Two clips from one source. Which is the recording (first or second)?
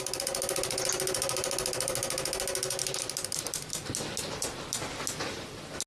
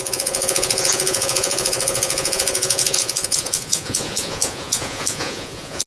first